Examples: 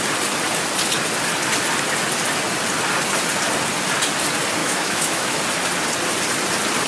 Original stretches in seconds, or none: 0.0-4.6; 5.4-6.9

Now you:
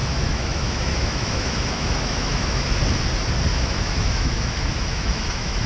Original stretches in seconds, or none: 2.8-3.5

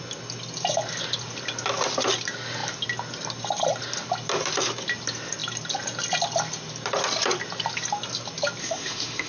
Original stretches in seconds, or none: 0.0-8.6